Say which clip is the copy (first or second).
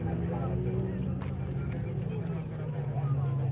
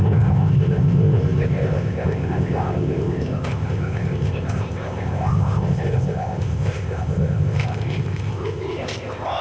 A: second